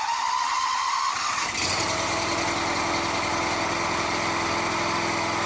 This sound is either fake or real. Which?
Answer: real